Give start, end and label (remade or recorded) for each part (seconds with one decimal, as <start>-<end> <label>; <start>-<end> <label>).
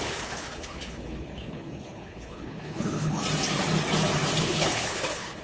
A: 0.0-3.2 remade; 3.2-4.4 recorded; 4.4-5.4 remade